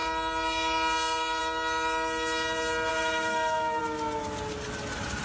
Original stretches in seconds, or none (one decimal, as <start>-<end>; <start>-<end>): 0.0-2.9; 3.8-5.2